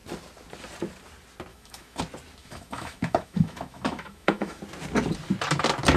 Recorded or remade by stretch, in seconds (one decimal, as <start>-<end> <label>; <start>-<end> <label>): 0.0-1.5 recorded; 1.5-2.0 remade; 2.0-2.4 recorded; 2.4-4.6 remade; 4.6-6.0 recorded

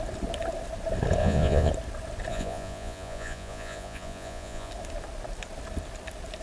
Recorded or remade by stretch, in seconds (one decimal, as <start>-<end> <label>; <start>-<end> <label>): 0.0-1.2 recorded; 1.2-1.7 remade; 1.7-2.3 recorded; 2.3-4.7 remade; 4.7-6.4 recorded

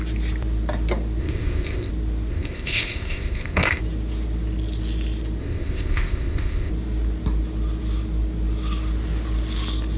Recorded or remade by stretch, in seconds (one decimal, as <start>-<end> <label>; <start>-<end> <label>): 0.0-1.2 recorded; 1.2-1.9 remade; 1.9-2.3 recorded; 2.3-3.8 remade; 3.8-5.4 recorded; 5.4-6.7 remade; 6.7-10.0 recorded

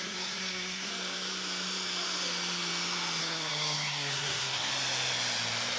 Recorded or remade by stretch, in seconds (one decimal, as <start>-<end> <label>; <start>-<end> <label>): 0.0-0.9 remade; 0.9-3.2 recorded; 3.2-4.7 remade; 4.7-5.8 recorded